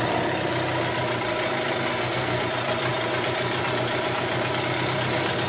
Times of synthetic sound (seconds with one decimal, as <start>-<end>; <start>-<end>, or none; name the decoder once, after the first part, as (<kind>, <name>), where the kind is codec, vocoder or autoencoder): 1.9-2.4 (codec, SNAC)